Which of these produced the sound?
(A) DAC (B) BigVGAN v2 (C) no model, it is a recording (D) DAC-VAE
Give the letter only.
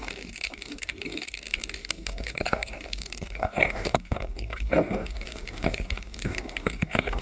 A